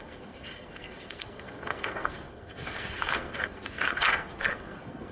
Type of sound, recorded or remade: remade